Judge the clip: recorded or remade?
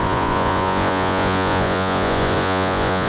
remade